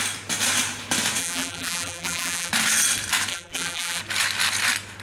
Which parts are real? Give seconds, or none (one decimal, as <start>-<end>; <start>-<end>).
0.0-1.2; 2.5-3.3; 4.0-5.0